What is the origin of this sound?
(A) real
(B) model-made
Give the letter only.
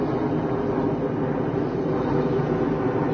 A